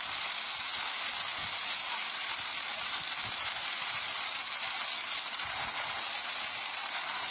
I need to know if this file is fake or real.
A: real